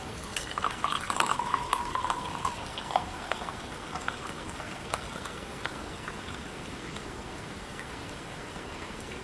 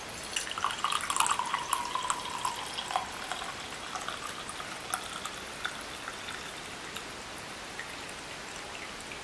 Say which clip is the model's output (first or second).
first